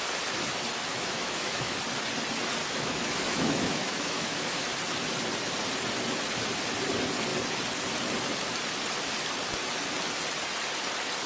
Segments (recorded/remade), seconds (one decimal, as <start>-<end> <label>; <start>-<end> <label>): 0.0-0.9 recorded; 0.9-1.8 remade; 1.8-2.6 recorded; 2.6-4.7 remade; 4.7-11.3 recorded